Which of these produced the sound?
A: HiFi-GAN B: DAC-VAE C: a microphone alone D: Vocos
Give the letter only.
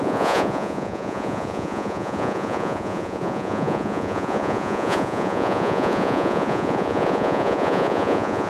D